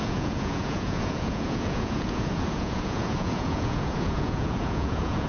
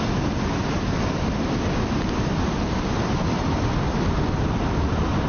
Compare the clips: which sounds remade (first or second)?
first